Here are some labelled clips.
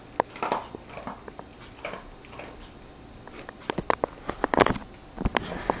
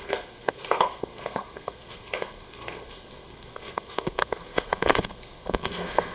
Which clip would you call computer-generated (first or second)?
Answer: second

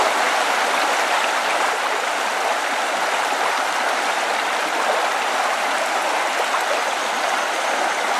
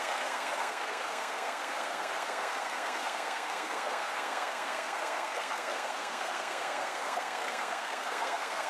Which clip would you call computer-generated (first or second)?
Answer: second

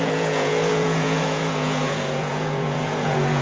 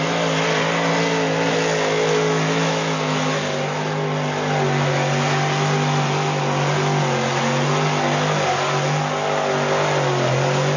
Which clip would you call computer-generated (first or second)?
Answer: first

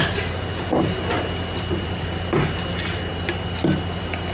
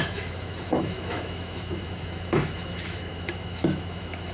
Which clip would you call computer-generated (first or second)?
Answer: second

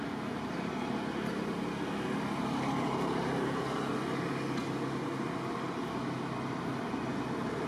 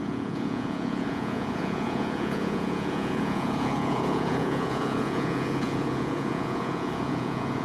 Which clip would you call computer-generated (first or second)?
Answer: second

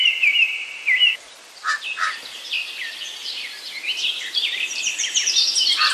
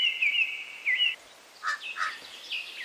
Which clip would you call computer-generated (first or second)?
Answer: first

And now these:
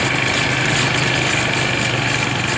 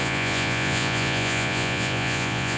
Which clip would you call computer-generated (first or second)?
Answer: second